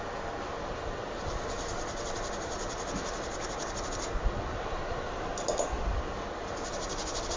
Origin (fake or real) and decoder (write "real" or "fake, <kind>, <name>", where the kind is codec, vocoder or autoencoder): real